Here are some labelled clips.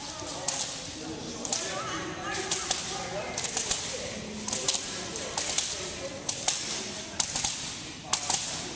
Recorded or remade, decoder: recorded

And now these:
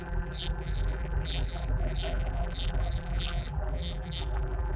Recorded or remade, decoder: remade, vocoder, BigVGAN v2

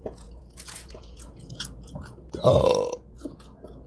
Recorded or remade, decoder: remade, vocoder, Vocos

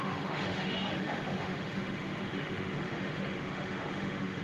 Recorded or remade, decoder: remade, autoencoder, DAC-VAE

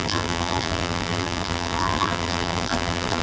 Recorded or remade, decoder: remade, vocoder, BigVGAN v2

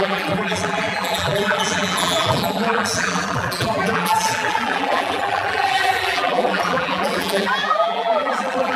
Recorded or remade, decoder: remade, vocoder, BigVGAN v2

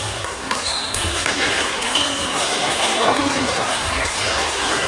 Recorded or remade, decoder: remade, codec, SNAC